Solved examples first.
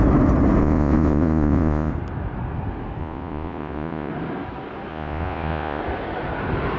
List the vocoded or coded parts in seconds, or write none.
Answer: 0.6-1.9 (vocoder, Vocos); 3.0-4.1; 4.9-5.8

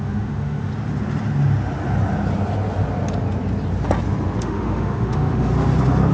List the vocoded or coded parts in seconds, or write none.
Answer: 0.0-0.7 (autoencoder, DAC-VAE); 4.4-5.5

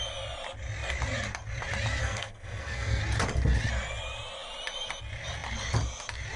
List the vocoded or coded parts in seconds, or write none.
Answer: 2.0-3.0 (codec, SNAC)

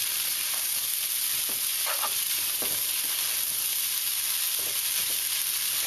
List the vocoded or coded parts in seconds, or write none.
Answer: none

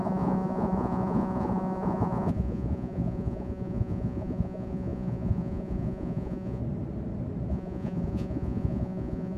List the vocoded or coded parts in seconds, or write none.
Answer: 0.0-6.6 (vocoder, Vocos); 7.5-9.4

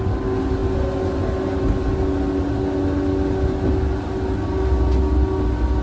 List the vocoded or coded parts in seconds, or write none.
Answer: none

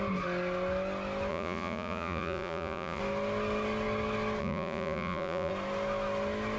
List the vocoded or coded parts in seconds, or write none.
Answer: 1.3-3.0 (vocoder, Vocos); 4.4-5.5

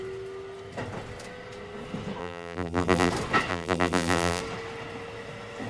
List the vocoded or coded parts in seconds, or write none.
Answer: 2.2-3.1 (vocoder, BigVGAN v2); 3.5-4.4